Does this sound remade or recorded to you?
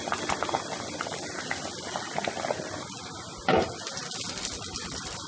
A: recorded